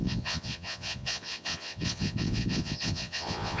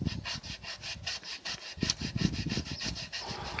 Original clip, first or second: second